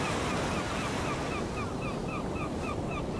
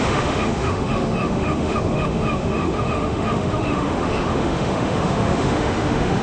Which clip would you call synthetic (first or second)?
second